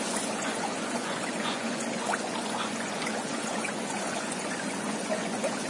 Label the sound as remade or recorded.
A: remade